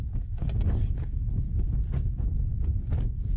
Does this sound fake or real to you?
real